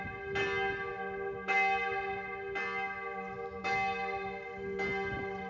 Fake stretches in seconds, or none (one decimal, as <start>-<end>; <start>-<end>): none